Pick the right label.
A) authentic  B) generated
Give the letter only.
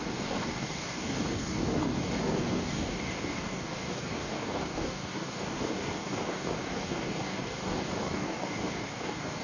B